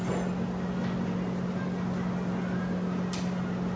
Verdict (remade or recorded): recorded